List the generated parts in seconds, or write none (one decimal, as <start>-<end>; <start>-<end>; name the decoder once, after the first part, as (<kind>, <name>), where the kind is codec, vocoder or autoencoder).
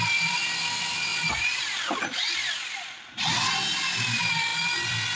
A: 0.0-4.5 (vocoder, BigVGAN v2)